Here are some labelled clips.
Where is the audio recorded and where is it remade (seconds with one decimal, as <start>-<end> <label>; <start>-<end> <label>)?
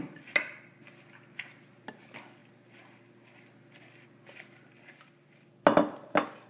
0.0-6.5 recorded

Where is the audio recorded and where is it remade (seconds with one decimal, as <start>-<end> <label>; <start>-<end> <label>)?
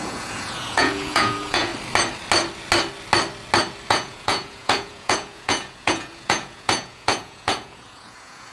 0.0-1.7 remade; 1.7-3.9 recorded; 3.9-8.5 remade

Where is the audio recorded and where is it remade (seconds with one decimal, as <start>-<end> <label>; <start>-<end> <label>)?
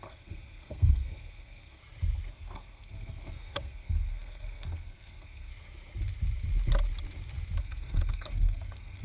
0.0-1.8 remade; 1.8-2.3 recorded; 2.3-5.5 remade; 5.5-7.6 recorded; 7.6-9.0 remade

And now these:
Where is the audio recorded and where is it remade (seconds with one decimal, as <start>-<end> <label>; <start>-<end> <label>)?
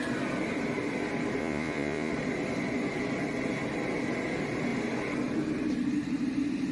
0.0-1.4 recorded; 1.4-2.1 remade; 2.1-6.7 recorded